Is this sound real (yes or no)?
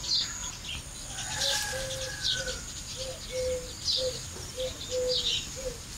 yes